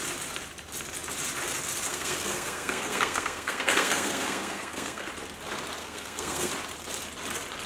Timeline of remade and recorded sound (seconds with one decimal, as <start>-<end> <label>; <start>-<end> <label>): 0.0-1.9 recorded; 1.9-5.1 remade; 5.1-5.8 recorded; 5.8-6.5 remade; 6.5-7.7 recorded

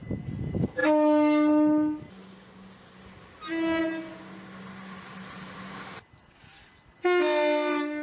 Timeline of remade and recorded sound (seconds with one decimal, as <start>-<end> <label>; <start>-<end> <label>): 0.0-8.0 recorded

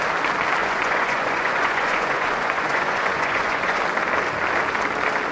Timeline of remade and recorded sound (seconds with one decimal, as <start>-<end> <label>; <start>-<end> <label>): 0.0-0.6 recorded; 0.6-3.8 remade; 3.8-5.3 recorded

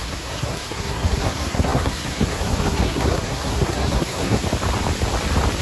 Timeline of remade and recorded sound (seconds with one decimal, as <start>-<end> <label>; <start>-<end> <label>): 0.0-4.4 remade; 4.4-5.6 recorded

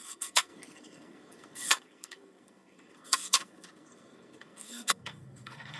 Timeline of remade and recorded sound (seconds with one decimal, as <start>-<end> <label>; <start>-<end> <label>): 0.0-5.8 remade

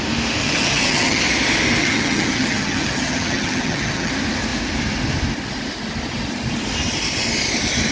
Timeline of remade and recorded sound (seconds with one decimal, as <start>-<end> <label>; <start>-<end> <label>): 0.0-0.4 recorded; 0.4-1.2 remade; 1.2-1.8 recorded; 1.8-4.1 remade; 4.1-7.9 recorded

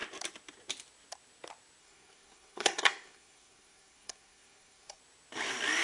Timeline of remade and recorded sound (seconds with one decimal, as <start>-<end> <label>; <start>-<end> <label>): 0.0-1.8 recorded; 1.8-5.0 remade; 5.0-5.8 recorded

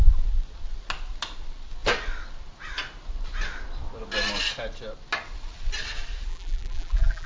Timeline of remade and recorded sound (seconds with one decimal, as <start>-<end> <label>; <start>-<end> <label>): 0.0-6.3 recorded; 6.3-7.3 remade